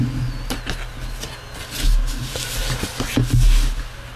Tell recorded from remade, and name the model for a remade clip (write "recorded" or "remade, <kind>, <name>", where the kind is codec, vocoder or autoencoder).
recorded